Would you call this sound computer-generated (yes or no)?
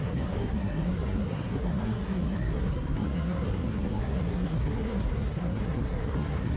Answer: yes